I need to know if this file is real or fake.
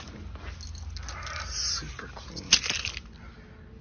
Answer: real